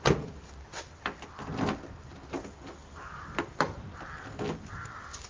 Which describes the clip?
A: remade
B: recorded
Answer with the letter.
B